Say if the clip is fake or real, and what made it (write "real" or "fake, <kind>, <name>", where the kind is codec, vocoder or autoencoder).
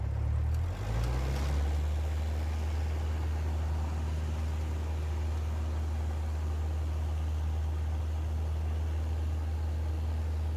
real